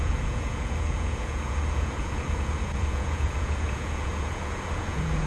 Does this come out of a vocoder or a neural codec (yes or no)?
yes